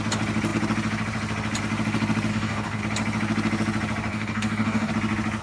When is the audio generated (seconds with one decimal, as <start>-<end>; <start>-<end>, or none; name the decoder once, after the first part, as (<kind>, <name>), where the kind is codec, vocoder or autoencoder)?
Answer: 2.3-2.8 (codec, DAC); 4.1-4.9